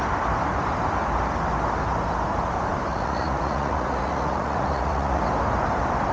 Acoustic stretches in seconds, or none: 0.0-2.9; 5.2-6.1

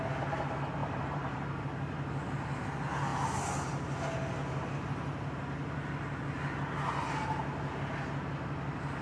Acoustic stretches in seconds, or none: 0.0-0.8; 1.5-5.6; 6.2-9.0

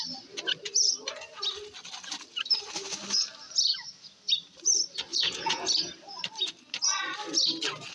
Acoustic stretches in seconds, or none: 0.0-5.1; 5.7-7.9

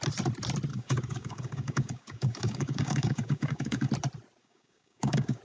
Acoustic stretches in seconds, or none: 0.0-0.7; 3.9-4.4

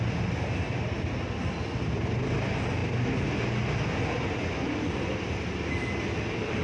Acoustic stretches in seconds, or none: 0.0-6.6